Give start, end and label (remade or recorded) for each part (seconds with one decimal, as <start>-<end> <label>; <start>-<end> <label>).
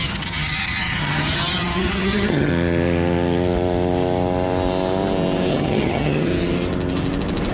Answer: 0.0-2.5 remade; 2.5-5.5 recorded; 5.5-6.3 remade; 6.3-7.5 recorded